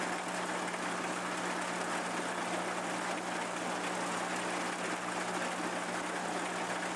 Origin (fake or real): real